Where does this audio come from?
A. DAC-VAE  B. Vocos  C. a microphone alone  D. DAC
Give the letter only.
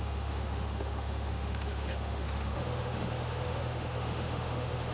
A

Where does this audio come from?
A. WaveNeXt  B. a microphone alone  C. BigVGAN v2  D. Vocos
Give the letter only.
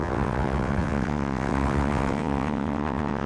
A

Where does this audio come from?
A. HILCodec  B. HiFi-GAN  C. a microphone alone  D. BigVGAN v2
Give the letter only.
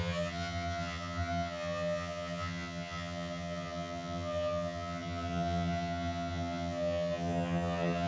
B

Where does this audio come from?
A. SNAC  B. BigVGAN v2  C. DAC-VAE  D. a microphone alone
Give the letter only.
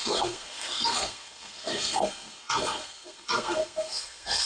A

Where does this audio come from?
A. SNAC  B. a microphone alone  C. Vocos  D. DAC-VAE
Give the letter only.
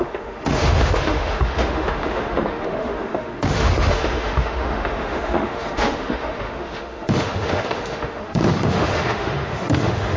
D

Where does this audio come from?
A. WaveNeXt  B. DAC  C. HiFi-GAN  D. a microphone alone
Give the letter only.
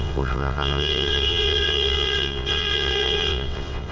A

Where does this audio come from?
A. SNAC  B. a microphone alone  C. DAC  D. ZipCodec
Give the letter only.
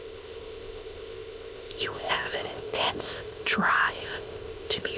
D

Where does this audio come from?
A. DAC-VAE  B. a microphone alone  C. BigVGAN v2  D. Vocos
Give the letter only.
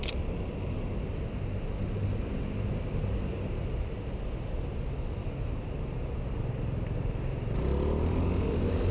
B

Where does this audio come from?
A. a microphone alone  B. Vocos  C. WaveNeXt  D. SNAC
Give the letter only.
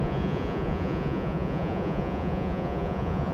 B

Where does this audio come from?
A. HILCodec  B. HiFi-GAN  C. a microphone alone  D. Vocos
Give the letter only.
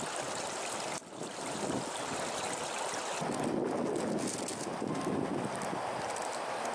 C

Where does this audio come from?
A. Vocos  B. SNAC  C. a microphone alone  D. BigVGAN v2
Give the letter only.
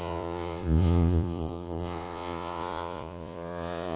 A